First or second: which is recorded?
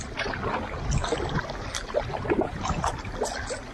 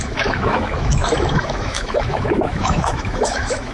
first